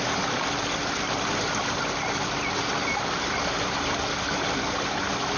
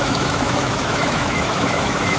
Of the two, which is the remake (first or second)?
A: second